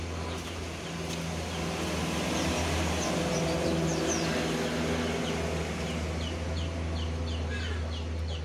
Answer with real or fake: real